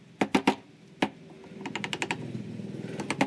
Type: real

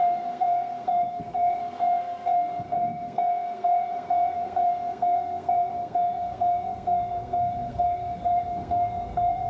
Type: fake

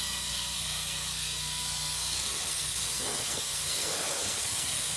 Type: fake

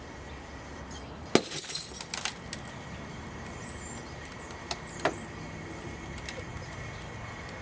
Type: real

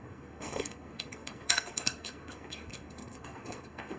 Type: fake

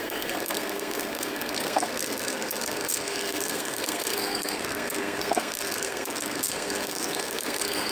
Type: fake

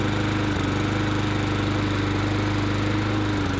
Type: real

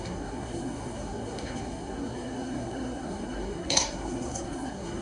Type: fake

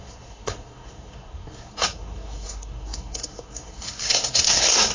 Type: fake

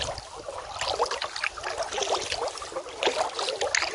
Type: real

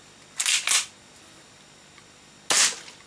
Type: real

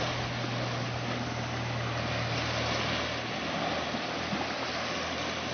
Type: real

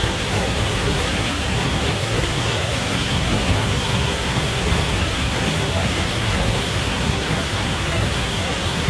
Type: fake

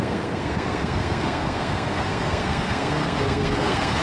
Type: fake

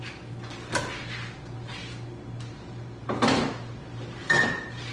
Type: real